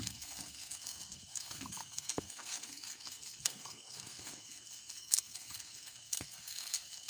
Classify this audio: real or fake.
fake